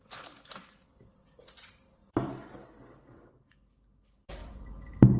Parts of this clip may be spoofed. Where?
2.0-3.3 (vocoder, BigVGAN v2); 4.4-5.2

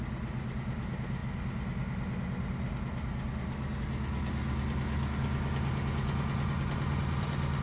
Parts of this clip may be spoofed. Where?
none

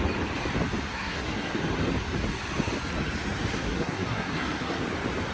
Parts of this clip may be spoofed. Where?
0.9-1.6 (codec, SNAC); 3.5-4.8

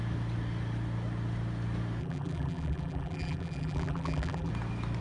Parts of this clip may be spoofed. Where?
2.0-4.5 (vocoder, BigVGAN v2)